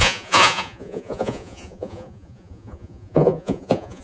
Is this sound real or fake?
fake